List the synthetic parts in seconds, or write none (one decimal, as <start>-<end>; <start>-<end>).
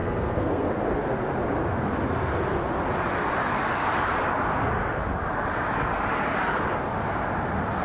0.0-0.7